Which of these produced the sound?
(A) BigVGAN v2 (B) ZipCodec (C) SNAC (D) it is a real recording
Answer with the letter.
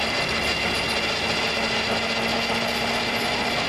D